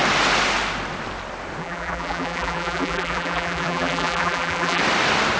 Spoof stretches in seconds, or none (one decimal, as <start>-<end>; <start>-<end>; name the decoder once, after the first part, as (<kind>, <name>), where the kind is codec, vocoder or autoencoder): 1.6-4.8 (vocoder, BigVGAN v2)

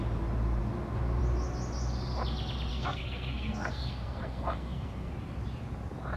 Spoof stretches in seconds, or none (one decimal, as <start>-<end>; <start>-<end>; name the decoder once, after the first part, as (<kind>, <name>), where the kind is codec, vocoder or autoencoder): 2.7-5.1 (codec, SNAC)

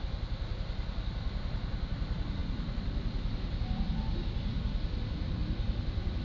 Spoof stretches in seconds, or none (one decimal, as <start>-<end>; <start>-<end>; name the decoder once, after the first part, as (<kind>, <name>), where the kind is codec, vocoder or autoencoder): none

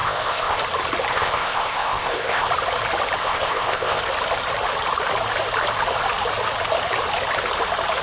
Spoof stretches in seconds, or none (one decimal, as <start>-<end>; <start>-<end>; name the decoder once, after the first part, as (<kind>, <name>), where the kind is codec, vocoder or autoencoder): 0.0-0.6 (codec, ZipCodec); 1.1-2.5; 3.2-4.0

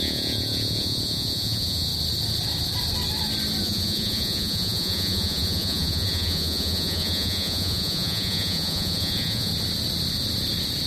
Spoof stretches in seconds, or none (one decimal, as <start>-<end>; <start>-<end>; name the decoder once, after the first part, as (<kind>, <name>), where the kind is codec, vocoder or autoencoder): 0.0-1.9 (vocoder, Vocos); 3.6-9.5

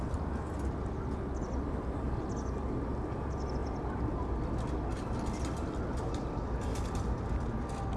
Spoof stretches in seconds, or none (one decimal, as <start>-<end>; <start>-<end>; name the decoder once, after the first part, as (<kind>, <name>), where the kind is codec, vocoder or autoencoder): none

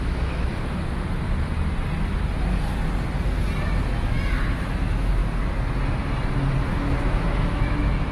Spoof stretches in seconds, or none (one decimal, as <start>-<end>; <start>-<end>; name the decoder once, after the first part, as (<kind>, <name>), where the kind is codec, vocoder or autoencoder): 0.0-0.5 (autoencoder, DAC-VAE); 4.4-5.2; 6.6-8.1